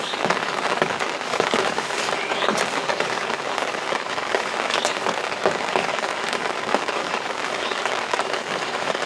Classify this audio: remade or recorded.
remade